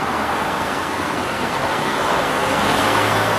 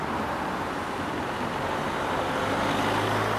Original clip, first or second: second